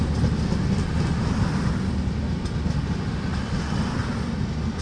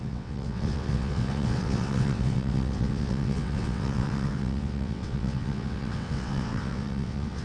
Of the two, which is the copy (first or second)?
second